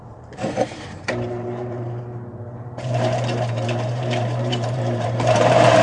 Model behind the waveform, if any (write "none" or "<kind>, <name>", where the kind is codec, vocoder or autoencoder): vocoder, BigVGAN v2